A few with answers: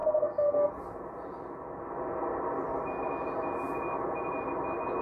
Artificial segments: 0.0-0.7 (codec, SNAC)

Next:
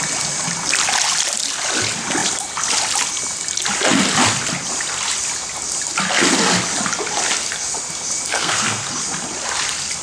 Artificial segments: 8.3-8.9 (codec, SNAC)

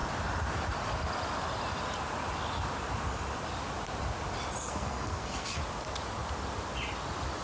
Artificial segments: 4.6-5.6 (codec, SNAC)